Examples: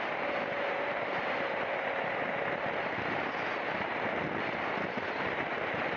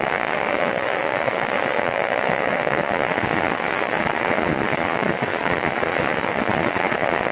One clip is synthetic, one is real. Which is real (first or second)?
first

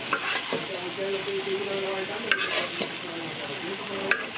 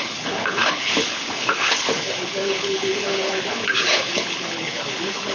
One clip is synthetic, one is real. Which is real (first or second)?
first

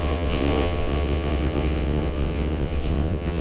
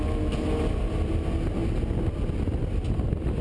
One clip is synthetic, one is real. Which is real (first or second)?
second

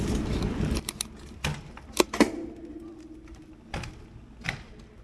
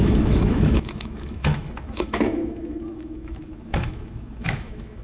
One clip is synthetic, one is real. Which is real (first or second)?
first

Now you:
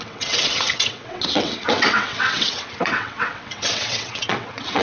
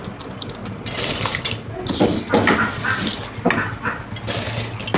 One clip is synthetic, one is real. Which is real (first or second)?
second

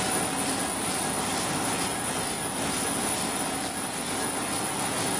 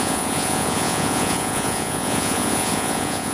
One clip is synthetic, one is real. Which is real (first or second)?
first